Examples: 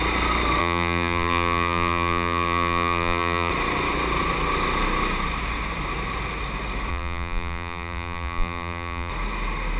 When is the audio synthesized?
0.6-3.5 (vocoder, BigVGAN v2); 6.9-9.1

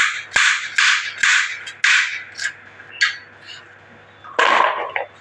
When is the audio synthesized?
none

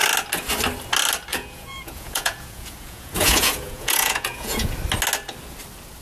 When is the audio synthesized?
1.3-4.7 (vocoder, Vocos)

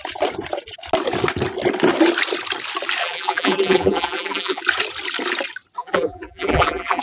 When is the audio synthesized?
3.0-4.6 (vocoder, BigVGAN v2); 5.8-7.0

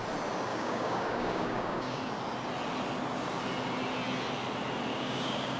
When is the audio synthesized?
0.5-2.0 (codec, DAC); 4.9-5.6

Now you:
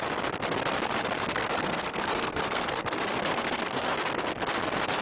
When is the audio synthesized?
1.3-4.1 (codec, SNAC)

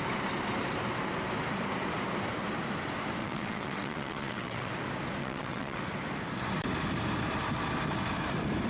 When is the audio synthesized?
3.2-4.7 (vocoder, WaveNeXt); 5.2-5.8

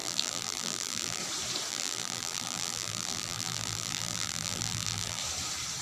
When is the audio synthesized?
0.0-1.2 (vocoder, BigVGAN v2); 1.7-5.2